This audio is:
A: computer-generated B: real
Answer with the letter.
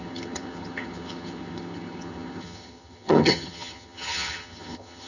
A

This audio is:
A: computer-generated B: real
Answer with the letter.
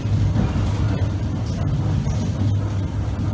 B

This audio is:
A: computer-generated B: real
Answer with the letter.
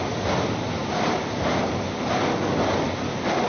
B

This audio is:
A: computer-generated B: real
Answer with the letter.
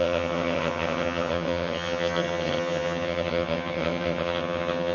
A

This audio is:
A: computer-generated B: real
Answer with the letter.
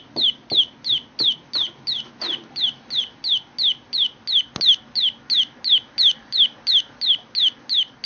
B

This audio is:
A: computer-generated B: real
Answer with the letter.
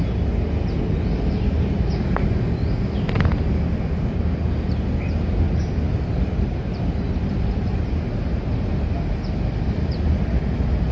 B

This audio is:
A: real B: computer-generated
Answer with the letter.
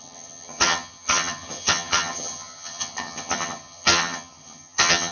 B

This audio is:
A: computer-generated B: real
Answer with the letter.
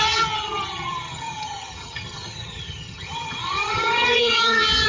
A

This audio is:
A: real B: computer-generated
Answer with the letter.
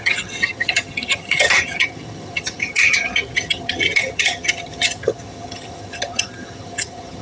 B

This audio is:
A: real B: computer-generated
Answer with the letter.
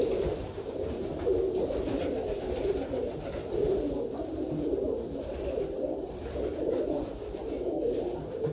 A